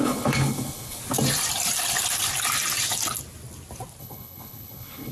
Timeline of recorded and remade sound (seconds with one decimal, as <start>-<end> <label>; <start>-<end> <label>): 0.0-1.0 remade; 1.0-4.0 recorded; 4.0-5.1 remade